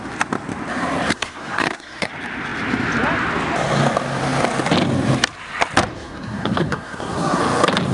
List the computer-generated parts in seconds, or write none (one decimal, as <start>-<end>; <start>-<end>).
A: 1.1-2.1; 5.9-7.4